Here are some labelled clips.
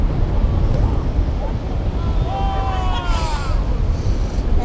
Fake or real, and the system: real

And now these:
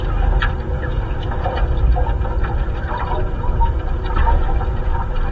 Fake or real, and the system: real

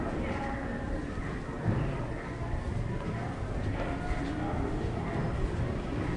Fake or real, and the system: real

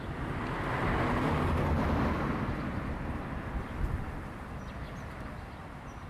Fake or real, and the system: real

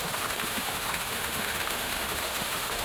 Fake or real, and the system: fake, autoencoder, DAC-VAE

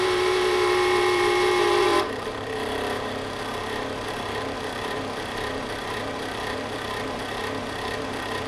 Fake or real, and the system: fake, vocoder, BigVGAN v2